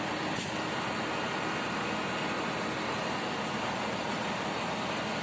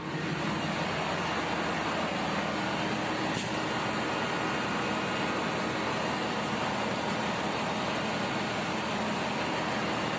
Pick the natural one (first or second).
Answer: second